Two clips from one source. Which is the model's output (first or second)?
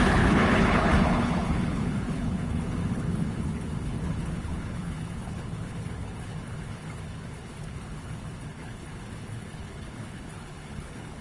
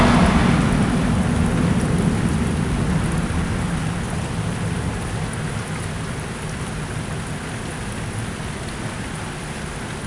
first